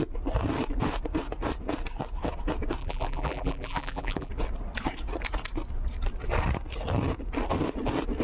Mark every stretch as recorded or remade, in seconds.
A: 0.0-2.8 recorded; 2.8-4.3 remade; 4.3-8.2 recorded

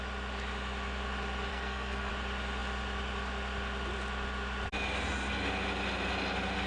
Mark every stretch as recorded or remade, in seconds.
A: 0.0-1.5 recorded; 1.5-2.1 remade; 2.1-6.7 recorded

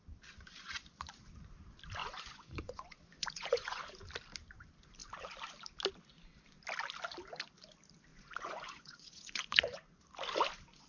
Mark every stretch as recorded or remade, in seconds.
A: 0.0-2.0 recorded; 2.0-3.8 remade; 3.8-8.1 recorded; 8.1-10.0 remade; 10.0-10.9 recorded

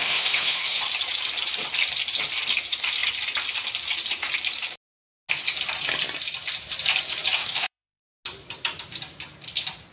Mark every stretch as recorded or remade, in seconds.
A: 0.0-0.8 remade; 0.8-7.4 recorded; 7.4-8.0 remade; 8.0-9.9 recorded

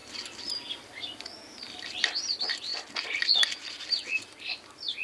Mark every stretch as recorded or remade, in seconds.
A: 0.0-5.0 recorded

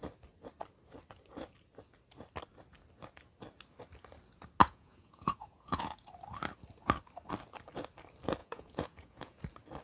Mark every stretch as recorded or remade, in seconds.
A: 0.0-4.6 recorded; 4.6-6.1 remade; 6.1-8.4 recorded; 8.4-9.4 remade; 9.4-9.8 recorded

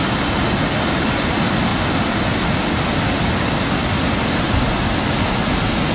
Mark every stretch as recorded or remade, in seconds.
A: 0.0-5.9 recorded